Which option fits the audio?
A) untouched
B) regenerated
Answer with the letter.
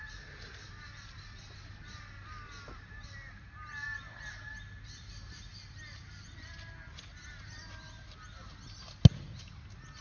A